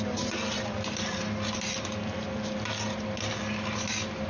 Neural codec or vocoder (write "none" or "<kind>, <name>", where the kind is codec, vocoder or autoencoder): none